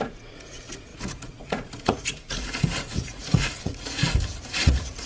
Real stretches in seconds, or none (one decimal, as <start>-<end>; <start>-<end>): 4.0-4.5